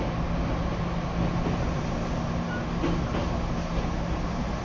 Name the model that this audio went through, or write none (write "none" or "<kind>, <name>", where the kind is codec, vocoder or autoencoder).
none